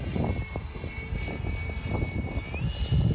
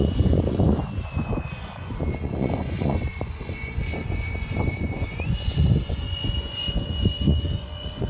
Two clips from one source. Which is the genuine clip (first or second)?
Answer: first